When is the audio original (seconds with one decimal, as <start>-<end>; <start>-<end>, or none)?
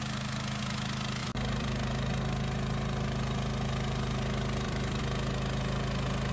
0.0-1.2; 5.0-6.3